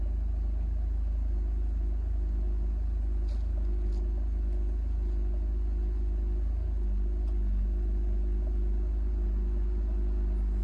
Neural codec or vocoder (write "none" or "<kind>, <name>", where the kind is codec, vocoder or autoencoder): none